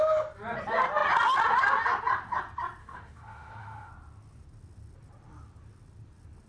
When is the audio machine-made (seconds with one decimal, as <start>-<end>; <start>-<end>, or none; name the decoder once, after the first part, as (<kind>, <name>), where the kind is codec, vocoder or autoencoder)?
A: 2.8-3.9 (autoencoder, DAC-VAE)